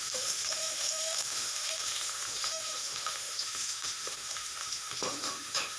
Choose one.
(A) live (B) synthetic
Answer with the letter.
B